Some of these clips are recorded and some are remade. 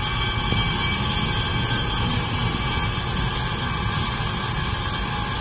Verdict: recorded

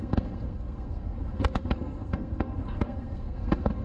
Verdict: remade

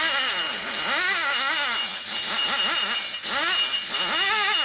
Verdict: recorded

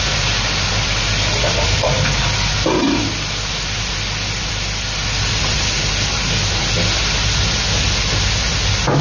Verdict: recorded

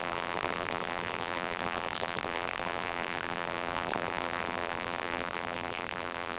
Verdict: remade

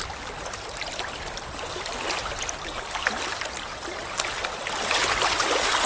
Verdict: recorded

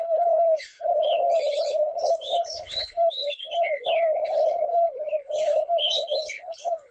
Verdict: remade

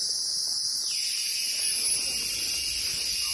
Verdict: recorded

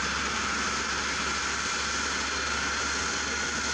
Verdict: recorded